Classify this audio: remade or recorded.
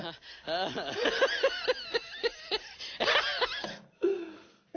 recorded